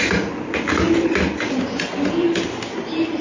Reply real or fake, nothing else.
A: real